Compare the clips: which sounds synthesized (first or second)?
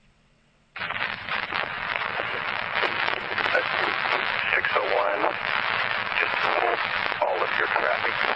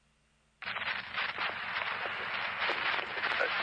first